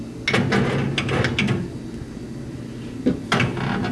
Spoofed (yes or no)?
no